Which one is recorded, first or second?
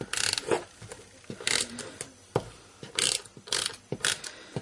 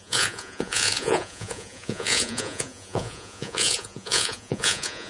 first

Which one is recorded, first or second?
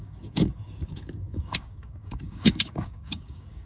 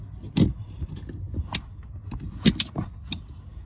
second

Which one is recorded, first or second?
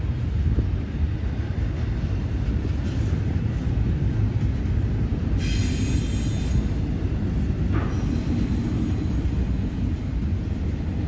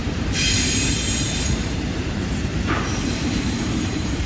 first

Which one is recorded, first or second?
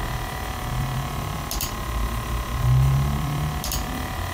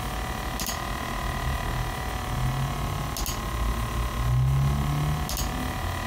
second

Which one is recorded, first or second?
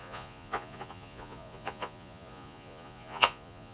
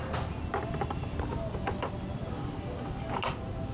second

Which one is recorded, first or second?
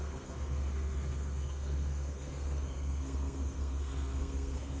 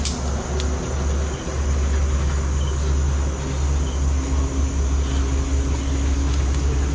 second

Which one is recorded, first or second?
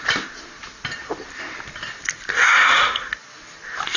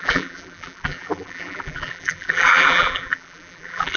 first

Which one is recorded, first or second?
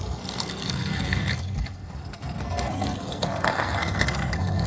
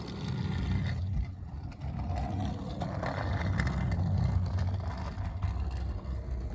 second